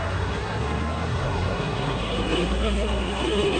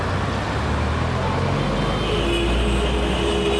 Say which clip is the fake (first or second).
first